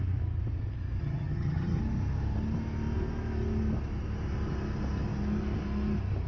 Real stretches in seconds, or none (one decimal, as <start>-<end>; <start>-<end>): 0.0-1.0; 1.8-6.3